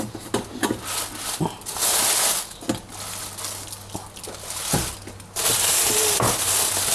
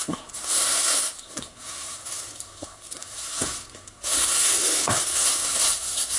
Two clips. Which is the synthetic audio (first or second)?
second